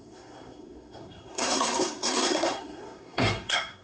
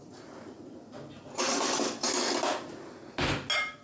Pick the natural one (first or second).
second